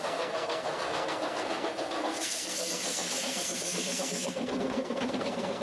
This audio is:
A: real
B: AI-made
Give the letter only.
B